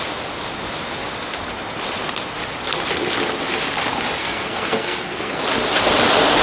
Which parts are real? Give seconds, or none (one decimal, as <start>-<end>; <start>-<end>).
0.0-4.2; 5.4-6.4